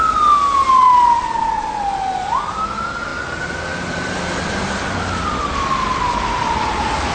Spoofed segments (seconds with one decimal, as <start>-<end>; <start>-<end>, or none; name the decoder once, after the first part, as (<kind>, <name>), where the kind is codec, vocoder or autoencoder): none